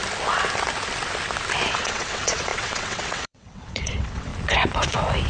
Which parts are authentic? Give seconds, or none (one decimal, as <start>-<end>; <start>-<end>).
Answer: 0.0-1.7; 4.3-5.3